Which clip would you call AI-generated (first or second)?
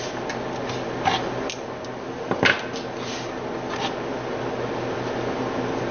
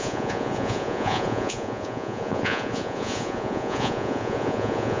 second